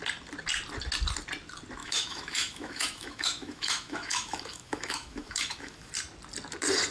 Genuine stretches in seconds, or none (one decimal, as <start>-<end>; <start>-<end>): 0.0-1.8; 5.9-6.9